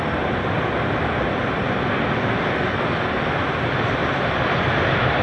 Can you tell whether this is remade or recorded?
remade